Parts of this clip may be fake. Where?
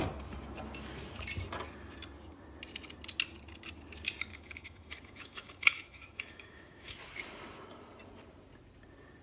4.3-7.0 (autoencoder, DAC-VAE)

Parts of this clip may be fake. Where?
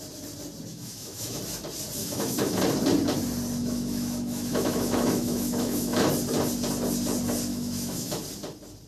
0.7-1.4 (autoencoder, DAC-VAE); 2.0-2.6; 3.6-6.1; 7.5-8.2